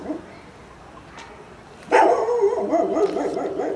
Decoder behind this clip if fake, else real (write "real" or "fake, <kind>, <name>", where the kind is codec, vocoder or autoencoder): real